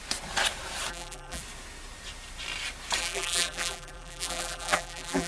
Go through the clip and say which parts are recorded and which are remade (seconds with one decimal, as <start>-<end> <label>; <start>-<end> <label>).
0.0-0.9 recorded; 0.9-1.4 remade; 1.4-3.0 recorded; 3.0-5.3 remade